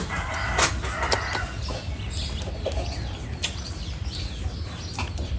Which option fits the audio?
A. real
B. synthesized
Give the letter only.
A